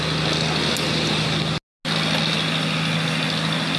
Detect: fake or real real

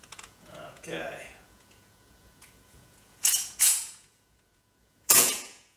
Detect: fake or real fake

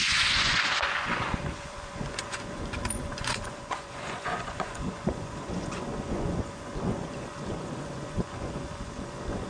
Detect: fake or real fake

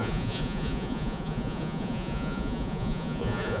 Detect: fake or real fake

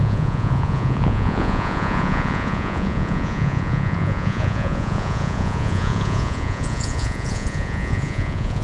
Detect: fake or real fake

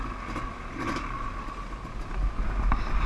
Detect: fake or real real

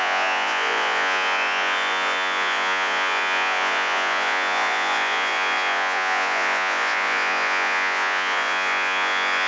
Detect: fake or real fake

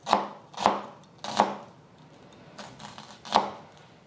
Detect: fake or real real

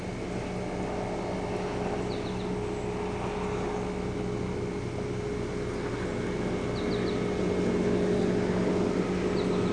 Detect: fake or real real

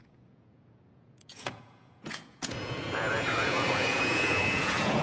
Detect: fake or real fake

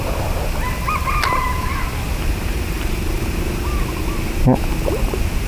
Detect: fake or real real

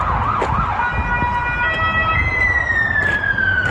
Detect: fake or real real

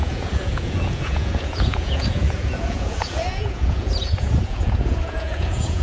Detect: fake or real fake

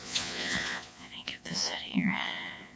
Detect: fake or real fake